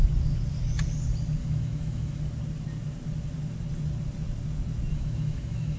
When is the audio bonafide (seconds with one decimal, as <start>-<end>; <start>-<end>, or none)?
0.0-1.4; 2.2-4.9